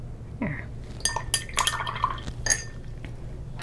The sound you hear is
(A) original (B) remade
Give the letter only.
A